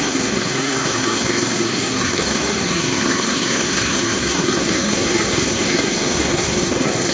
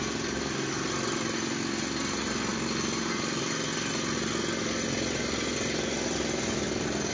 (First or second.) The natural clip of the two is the second